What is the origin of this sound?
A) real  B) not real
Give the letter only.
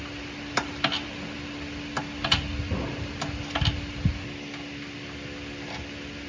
A